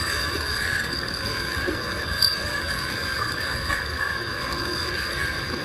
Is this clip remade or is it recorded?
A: remade